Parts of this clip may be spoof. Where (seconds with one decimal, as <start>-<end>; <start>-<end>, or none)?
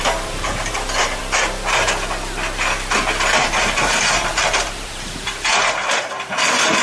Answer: 0.0-1.2; 3.4-5.5; 6.3-6.8